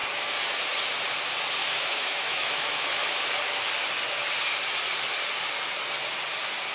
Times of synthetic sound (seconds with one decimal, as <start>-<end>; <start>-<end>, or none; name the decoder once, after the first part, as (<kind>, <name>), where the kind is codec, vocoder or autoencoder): 1.6-3.2 (autoencoder, DAC-VAE)